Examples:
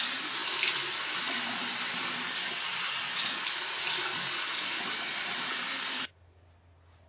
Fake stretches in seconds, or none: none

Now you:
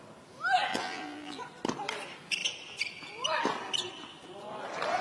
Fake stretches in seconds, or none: 0.7-1.4

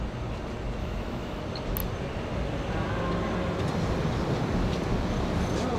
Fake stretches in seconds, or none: 0.8-1.4